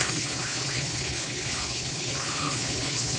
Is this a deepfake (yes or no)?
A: yes